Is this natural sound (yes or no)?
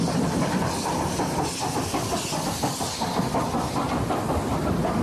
yes